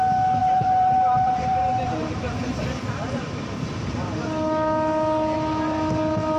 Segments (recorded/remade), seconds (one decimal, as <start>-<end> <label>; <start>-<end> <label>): 0.0-0.4 recorded; 0.4-2.6 remade; 2.6-6.4 recorded